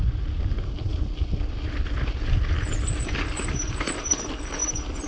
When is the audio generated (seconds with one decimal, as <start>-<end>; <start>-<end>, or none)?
none

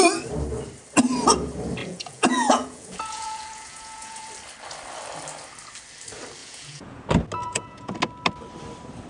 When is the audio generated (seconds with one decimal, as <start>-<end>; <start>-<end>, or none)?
1.8-4.3; 6.4-7.0; 7.4-8.0

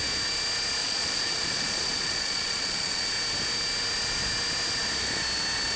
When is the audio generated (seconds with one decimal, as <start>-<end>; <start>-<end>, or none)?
0.8-3.0